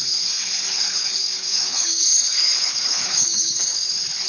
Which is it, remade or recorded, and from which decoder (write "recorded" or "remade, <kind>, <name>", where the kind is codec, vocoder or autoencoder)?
remade, codec, HILCodec